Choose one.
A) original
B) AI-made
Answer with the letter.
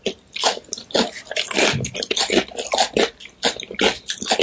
A